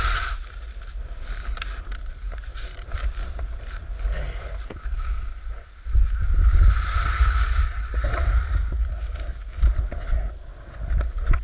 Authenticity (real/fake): real